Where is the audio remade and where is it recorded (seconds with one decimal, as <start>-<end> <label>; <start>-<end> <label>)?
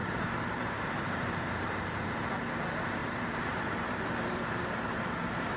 0.0-2.5 remade; 2.5-3.0 recorded; 3.0-5.0 remade; 5.0-5.6 recorded